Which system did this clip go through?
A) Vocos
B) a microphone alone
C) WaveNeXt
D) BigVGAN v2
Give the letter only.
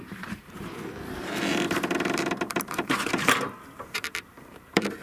D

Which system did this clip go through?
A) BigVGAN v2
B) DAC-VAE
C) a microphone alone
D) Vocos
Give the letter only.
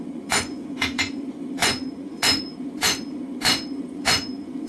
D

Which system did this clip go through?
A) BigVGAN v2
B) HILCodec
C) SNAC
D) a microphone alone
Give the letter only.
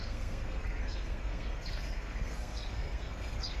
C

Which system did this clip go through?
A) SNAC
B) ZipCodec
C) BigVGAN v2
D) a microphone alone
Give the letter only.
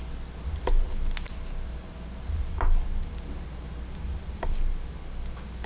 D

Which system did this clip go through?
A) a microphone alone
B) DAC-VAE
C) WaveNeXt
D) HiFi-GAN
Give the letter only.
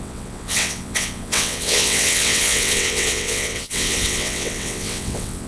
C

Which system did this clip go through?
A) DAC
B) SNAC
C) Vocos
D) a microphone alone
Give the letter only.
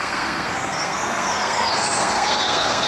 B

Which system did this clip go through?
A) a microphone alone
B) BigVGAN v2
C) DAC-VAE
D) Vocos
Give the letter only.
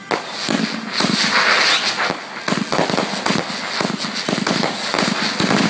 A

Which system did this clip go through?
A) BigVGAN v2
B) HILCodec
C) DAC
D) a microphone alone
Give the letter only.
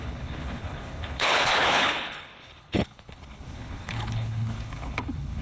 B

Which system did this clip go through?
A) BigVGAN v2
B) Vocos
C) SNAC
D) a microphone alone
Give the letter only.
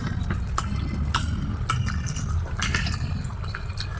D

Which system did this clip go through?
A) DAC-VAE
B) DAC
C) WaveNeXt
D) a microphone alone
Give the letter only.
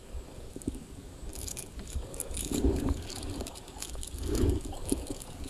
B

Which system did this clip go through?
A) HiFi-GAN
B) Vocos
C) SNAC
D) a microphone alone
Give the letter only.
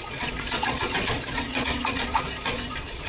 B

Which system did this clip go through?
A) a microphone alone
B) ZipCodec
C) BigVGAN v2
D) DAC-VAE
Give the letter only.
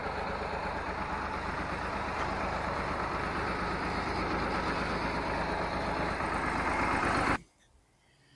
A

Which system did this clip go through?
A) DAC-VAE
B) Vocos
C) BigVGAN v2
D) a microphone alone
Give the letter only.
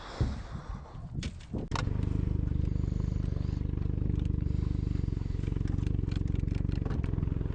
D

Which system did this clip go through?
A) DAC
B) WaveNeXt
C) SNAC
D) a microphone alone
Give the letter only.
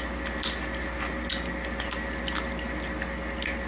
D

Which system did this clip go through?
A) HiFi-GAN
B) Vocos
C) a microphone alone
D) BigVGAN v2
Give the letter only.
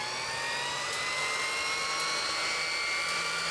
C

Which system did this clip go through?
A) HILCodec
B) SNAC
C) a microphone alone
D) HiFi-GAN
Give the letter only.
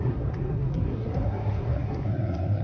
B